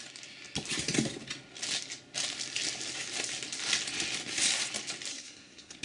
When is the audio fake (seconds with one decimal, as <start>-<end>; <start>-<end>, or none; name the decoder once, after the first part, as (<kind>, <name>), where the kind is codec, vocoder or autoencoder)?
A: 5.1-5.8 (codec, SNAC)